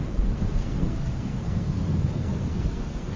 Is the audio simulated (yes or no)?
yes